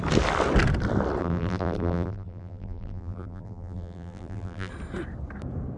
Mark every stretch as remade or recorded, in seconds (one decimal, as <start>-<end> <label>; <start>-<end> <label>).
0.0-1.2 recorded; 1.2-4.7 remade; 4.7-5.8 recorded